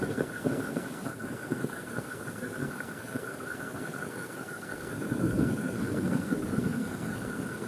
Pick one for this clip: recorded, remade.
remade